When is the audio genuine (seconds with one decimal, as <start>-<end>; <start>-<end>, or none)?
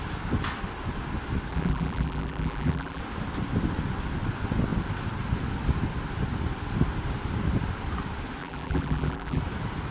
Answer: 0.0-1.5; 3.0-8.4; 9.4-9.9